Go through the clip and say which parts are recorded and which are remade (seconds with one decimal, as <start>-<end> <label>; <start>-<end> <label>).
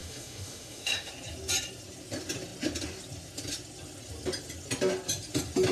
0.0-1.1 remade; 1.1-5.7 recorded